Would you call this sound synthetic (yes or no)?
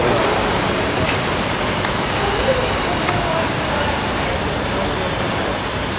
yes